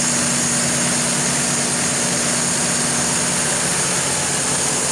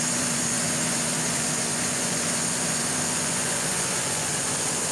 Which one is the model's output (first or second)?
second